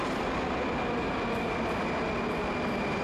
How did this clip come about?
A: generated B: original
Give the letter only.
B